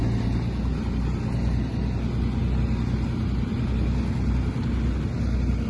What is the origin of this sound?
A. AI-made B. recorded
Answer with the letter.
B